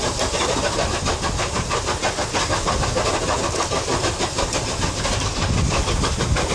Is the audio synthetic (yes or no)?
no